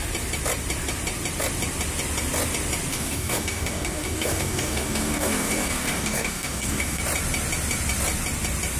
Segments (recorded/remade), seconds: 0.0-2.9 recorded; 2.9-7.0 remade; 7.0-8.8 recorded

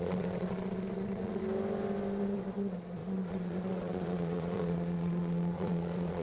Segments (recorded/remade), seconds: 0.0-1.4 remade; 1.4-2.2 recorded; 2.2-6.2 remade

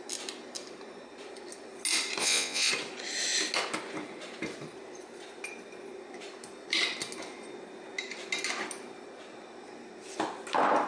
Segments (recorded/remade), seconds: 0.0-2.2 recorded; 2.2-2.7 remade; 2.7-10.9 recorded

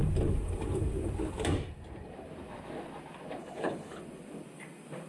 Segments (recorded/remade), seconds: 0.0-3.4 recorded; 3.4-4.0 remade; 4.0-5.1 recorded

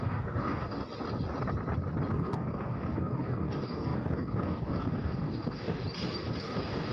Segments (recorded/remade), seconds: 0.0-0.8 remade; 0.8-2.1 recorded; 2.1-5.8 remade; 5.8-6.4 recorded; 6.4-6.9 remade

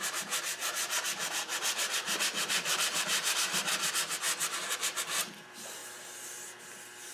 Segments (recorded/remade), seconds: 0.0-0.6 remade; 0.6-1.8 recorded; 1.8-5.8 remade; 5.8-6.6 recorded; 6.6-7.1 remade